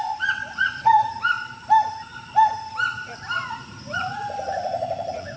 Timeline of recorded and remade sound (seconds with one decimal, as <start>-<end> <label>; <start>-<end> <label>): 0.0-1.1 remade; 1.1-3.4 recorded; 3.4-5.4 remade